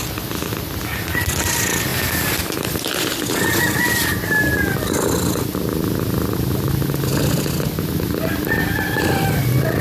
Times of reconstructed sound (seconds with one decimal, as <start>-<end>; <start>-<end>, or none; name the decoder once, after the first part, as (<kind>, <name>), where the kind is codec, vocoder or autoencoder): none